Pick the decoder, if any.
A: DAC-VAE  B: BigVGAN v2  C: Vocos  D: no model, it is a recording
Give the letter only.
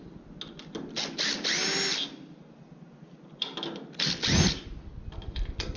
D